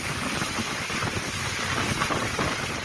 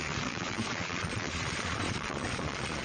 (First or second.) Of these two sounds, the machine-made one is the second